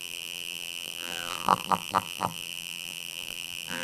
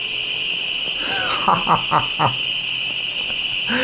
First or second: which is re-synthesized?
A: first